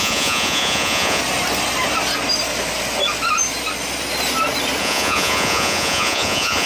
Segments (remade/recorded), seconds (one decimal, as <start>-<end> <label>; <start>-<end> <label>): 0.0-1.2 remade; 1.2-4.8 recorded; 4.8-6.7 remade